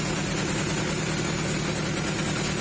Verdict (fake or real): real